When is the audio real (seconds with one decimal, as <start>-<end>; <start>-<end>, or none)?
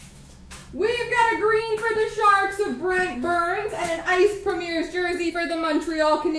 0.6-1.6; 4.4-5.3